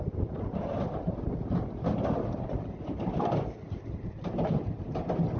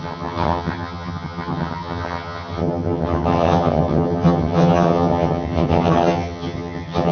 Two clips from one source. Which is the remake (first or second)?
second